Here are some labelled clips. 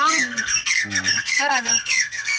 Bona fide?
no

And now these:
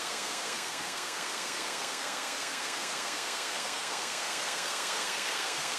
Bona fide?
no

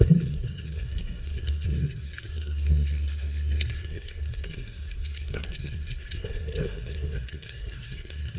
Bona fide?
no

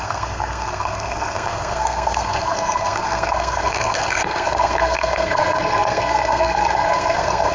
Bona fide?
no